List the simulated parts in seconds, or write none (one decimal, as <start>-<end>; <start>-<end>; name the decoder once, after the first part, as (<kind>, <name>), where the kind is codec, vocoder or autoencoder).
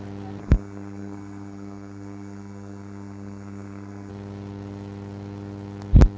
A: 0.4-4.1 (codec, SNAC)